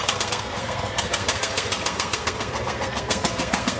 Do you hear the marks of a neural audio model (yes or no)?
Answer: yes